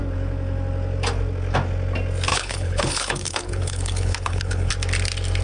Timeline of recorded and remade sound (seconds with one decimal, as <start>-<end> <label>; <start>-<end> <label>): 0.0-2.3 recorded; 2.3-4.7 remade; 4.7-5.4 recorded